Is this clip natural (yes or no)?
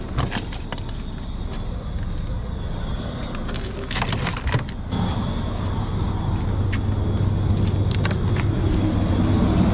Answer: yes